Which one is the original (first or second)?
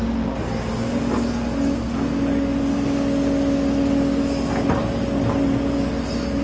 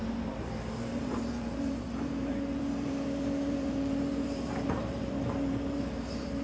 first